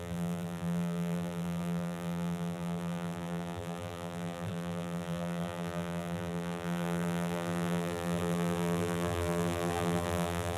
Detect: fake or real fake